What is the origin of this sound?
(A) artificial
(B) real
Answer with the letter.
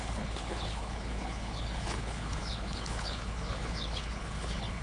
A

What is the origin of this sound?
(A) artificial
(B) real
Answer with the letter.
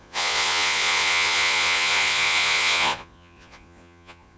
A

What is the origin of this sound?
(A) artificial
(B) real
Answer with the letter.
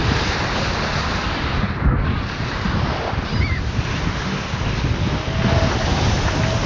B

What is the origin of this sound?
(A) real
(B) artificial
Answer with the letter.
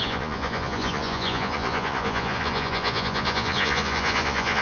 B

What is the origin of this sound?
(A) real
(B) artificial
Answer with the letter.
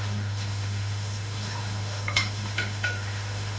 B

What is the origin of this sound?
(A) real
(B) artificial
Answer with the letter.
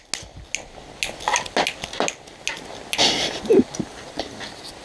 A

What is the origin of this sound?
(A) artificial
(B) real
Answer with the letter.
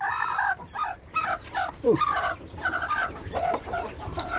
A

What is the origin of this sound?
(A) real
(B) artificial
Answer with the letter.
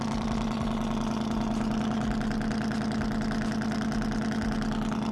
A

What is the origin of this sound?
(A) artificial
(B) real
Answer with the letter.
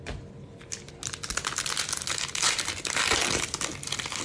B